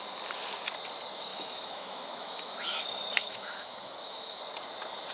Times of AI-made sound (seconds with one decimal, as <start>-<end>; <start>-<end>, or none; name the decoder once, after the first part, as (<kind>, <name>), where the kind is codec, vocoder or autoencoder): 1.3-2.8 (autoencoder, DAC-VAE); 3.2-4.4